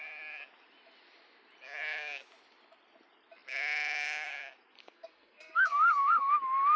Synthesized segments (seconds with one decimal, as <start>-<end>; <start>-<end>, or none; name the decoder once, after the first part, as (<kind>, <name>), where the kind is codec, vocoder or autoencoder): 4.8-6.3 (codec, SNAC)